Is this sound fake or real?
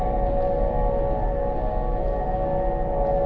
real